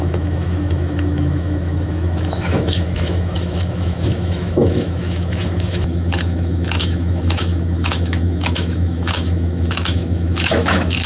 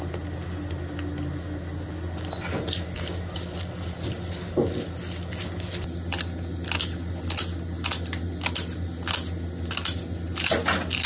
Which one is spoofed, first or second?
first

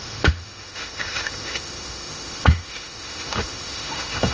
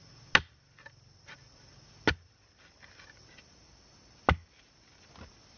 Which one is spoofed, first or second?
first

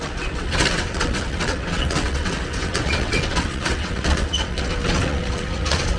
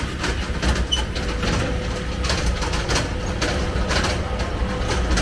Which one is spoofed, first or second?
first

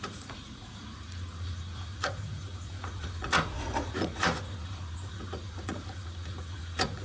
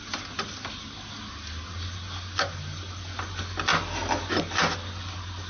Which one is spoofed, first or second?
first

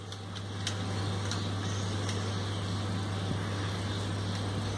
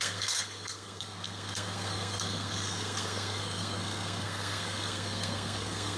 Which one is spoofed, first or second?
second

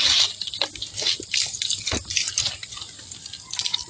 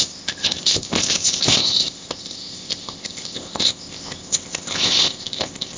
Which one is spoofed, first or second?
second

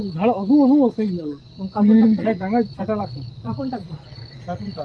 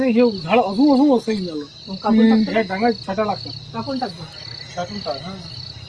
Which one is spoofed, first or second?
first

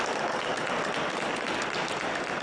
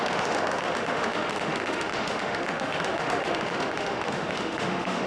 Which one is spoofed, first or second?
second